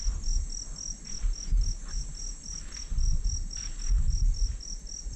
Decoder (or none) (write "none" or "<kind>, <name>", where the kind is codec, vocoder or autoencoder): none